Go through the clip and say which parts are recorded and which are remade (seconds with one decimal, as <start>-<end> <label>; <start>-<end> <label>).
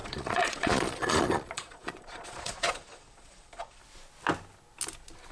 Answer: 0.0-3.8 remade; 3.8-5.3 recorded